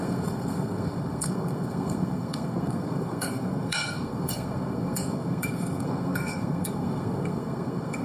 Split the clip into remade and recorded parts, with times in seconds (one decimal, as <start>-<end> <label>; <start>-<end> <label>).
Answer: 0.0-8.0 remade